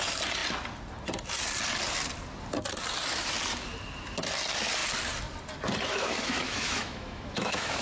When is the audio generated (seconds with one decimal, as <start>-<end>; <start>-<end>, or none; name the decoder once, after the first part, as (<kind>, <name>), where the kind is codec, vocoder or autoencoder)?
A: 5.9-7.8 (autoencoder, DAC-VAE)